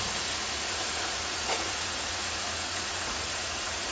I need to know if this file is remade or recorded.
remade